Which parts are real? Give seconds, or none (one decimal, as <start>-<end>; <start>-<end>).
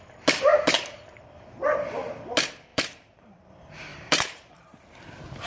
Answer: 0.0-2.7; 3.5-3.9; 4.8-5.5